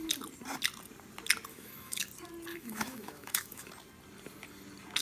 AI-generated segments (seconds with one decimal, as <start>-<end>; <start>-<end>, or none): 1.5-2.1; 2.5-3.7